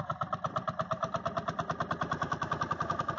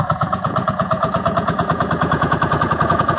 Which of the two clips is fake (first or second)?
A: second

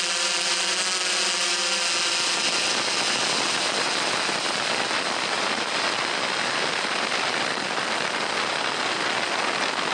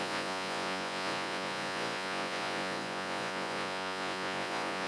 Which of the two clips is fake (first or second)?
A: second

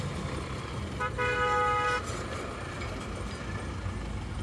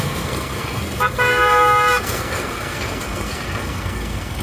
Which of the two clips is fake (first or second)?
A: second